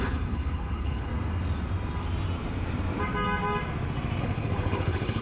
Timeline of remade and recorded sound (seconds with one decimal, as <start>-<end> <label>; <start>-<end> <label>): 0.0-1.1 remade; 1.1-4.2 recorded; 4.2-5.2 remade